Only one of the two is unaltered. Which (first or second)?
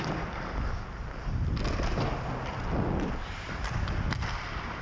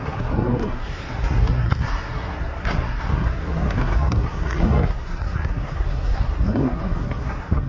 first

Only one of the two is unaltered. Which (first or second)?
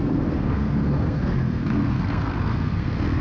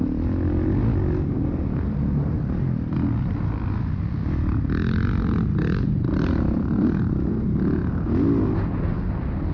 second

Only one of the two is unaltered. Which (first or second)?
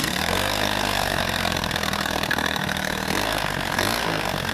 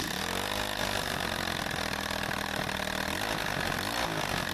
second